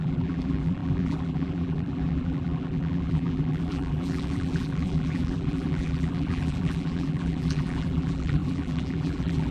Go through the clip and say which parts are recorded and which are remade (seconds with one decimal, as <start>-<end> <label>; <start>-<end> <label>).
0.0-9.5 remade